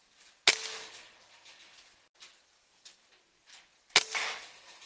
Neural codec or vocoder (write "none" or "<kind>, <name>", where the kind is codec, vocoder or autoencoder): none